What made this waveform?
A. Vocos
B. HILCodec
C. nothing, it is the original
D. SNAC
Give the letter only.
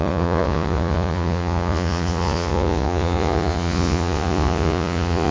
A